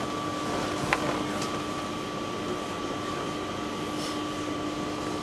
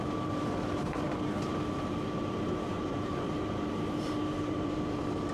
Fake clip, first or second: second